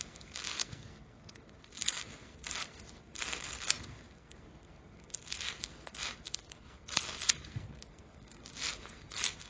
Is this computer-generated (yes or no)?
yes